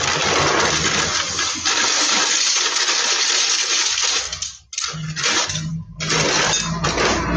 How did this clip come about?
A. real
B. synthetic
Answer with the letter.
A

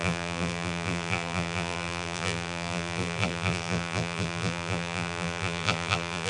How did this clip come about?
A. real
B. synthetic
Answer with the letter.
B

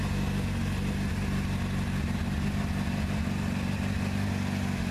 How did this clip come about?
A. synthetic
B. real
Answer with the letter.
B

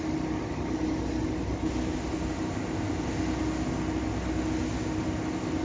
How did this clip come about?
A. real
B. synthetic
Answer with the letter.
A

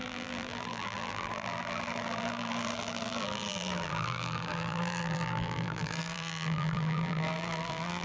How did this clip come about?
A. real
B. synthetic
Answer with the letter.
B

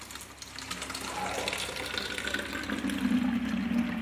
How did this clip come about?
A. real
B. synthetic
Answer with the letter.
A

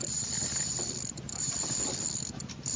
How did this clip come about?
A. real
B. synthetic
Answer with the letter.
B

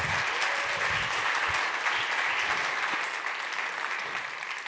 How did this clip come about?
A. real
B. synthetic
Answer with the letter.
A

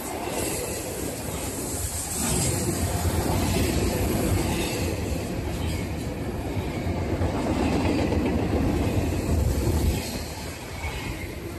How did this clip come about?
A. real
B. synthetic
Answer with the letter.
B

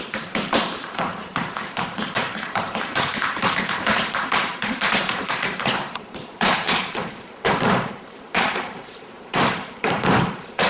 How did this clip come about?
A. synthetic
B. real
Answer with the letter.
A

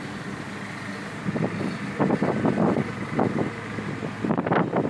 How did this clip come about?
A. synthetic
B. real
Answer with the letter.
A